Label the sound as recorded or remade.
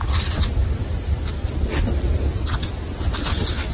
recorded